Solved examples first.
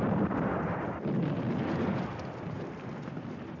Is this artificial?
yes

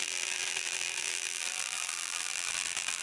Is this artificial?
yes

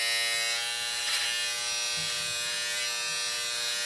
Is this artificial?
no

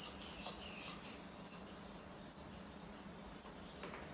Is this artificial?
yes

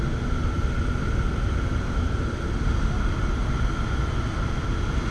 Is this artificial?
no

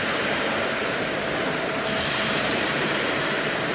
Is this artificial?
yes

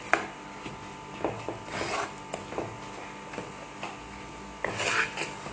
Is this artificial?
no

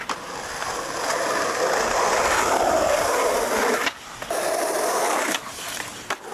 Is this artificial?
no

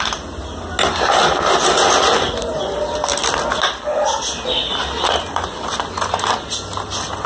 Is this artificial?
no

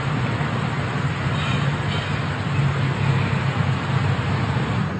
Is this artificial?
no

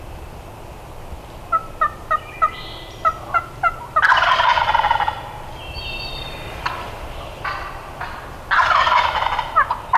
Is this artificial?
no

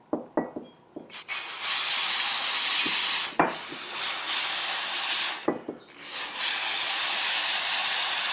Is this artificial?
no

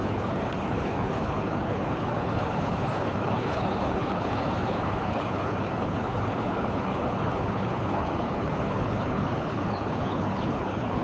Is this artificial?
yes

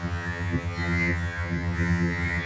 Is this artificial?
yes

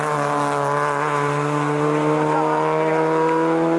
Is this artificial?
no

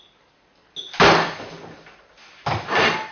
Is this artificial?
no